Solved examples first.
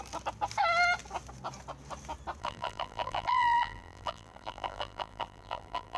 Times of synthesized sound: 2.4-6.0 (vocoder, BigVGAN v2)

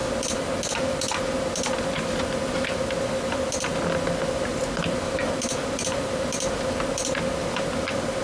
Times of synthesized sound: 0.0-8.2 (vocoder, BigVGAN v2)

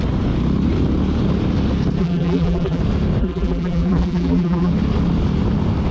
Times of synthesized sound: 2.0-2.8 (vocoder, BigVGAN v2); 3.2-4.7

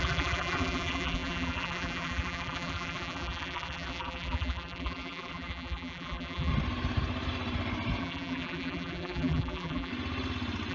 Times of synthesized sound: 0.0-6.5 (vocoder, BigVGAN v2); 8.0-9.9

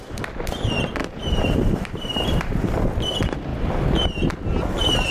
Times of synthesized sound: 1.0-2.4 (vocoder, BigVGAN v2)